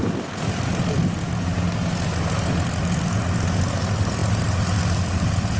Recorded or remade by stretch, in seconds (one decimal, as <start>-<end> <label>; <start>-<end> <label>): 0.0-5.6 recorded

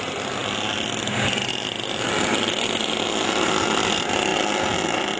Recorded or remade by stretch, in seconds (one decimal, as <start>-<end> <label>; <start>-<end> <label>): 0.0-5.2 recorded

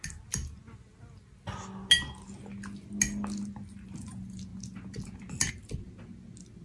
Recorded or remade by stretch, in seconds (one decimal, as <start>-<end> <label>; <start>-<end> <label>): 0.0-6.6 recorded

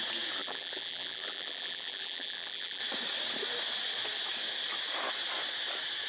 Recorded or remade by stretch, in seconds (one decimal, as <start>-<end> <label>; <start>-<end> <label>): 0.0-0.4 recorded; 0.4-2.8 remade; 2.8-6.1 recorded